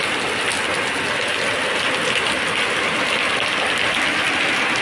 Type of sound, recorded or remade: recorded